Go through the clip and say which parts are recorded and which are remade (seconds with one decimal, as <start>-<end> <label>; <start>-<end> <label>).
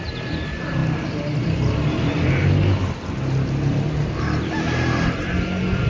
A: 0.0-5.9 recorded